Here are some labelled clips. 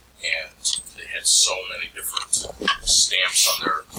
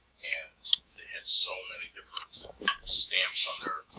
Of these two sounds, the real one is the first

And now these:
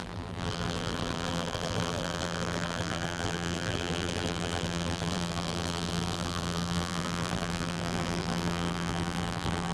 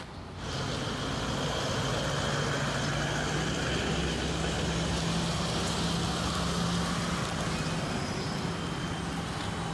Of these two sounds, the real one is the second